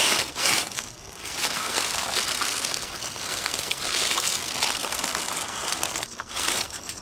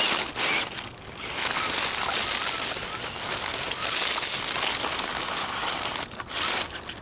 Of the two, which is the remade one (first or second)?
first